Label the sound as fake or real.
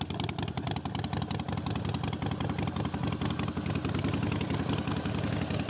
real